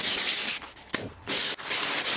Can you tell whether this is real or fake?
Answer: real